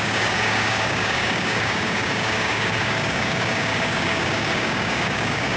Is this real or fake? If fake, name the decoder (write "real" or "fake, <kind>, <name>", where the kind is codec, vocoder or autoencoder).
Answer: fake, codec, DAC